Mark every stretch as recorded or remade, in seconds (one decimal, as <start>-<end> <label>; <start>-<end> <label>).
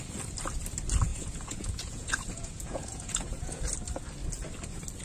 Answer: 0.0-1.1 recorded; 1.1-3.6 remade; 3.6-5.0 recorded